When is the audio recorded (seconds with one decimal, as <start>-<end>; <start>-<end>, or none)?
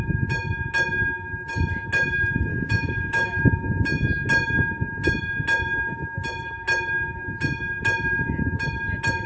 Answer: 0.0-2.5; 3.4-9.3